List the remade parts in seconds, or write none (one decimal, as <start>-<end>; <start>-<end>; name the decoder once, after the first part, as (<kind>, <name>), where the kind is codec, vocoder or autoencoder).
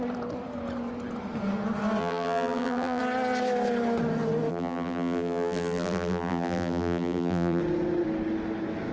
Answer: 2.0-3.0 (vocoder, BigVGAN v2); 4.5-7.6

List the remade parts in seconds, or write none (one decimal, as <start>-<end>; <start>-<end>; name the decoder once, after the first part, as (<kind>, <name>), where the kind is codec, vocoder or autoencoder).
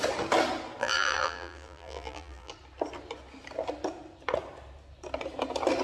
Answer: 0.8-2.5 (vocoder, BigVGAN v2)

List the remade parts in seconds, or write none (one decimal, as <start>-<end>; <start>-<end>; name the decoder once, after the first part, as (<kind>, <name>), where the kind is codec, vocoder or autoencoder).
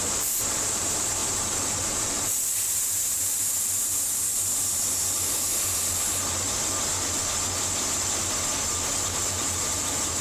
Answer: 0.0-5.5 (vocoder, BigVGAN v2); 9.0-10.2